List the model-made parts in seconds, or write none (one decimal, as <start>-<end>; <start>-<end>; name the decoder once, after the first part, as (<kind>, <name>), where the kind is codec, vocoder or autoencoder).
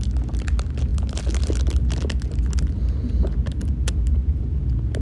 none